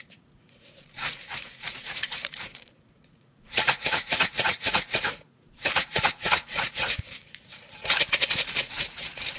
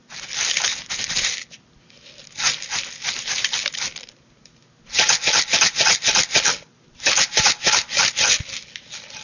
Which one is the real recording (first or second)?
second